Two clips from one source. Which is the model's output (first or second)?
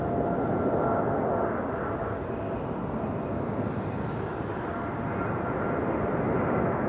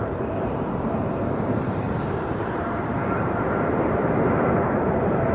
second